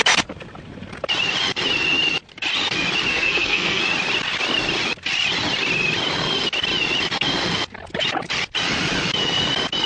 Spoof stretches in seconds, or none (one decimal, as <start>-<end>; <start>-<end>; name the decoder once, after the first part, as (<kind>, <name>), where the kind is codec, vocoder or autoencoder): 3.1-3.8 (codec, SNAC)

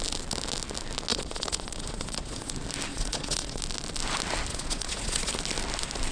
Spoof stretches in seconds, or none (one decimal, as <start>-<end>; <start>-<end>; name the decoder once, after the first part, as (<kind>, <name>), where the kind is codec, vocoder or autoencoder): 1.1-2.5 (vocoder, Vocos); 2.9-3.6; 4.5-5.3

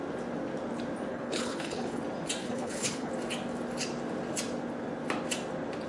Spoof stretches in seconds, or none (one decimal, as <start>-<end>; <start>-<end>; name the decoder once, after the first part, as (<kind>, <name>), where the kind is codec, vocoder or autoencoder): 1.1-2.0 (codec, HILCodec); 2.4-3.1

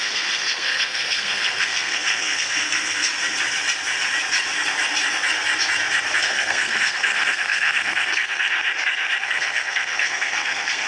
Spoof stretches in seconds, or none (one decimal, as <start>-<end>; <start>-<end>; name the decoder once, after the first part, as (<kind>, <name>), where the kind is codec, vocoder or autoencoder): 0.0-3.1 (codec, SNAC); 6.2-8.6; 9.2-10.9

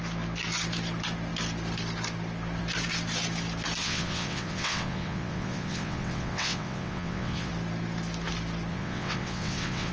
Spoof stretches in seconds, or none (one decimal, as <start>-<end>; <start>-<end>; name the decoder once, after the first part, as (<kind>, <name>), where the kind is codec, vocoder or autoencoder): 3.8-7.5 (vocoder, WaveNeXt); 8.7-9.9

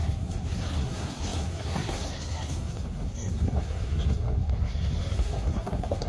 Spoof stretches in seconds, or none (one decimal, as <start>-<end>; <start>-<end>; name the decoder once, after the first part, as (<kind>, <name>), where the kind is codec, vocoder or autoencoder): 0.0-6.1 (codec, SNAC)